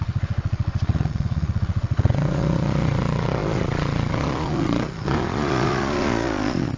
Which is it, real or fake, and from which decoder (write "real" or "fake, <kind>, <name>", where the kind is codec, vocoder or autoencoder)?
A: fake, vocoder, Vocos